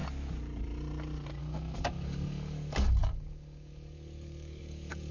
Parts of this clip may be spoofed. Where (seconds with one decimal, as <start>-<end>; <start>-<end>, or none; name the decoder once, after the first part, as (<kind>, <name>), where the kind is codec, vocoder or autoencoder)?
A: 1.4-5.1 (codec, DAC)